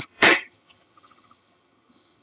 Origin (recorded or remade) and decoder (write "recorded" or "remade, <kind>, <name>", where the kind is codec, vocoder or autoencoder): remade, vocoder, HiFi-GAN